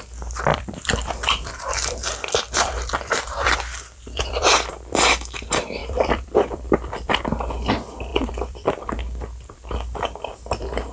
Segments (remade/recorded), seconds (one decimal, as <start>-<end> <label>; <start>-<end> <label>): 0.0-0.5 recorded; 0.5-4.7 remade; 4.7-5.8 recorded; 5.8-7.2 remade; 7.2-8.1 recorded; 8.1-8.8 remade; 8.8-10.9 recorded